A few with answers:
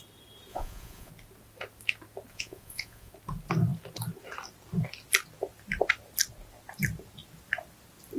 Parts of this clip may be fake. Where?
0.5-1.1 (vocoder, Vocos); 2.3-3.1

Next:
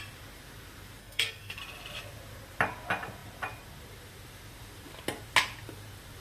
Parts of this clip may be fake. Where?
1.0-1.6 (codec, SNAC)

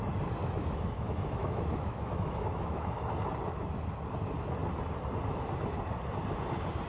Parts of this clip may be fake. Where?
0.4-3.1 (autoencoder, DAC-VAE)